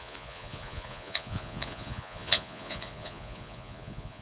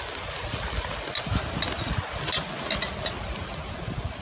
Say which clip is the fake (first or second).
first